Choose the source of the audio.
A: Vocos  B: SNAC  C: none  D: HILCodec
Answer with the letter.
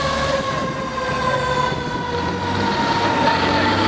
C